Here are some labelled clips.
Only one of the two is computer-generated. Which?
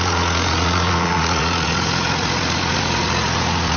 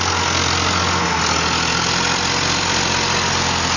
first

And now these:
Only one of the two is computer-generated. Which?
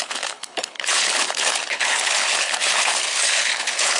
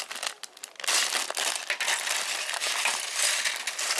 first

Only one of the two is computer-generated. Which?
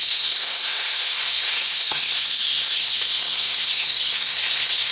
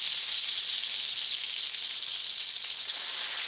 first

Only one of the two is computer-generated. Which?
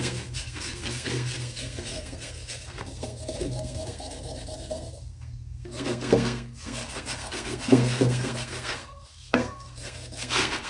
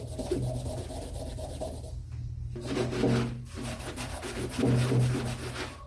first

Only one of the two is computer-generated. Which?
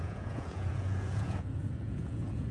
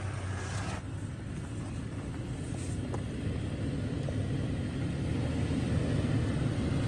first